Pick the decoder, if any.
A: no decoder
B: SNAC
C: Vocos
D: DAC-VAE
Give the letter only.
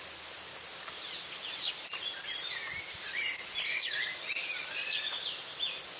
A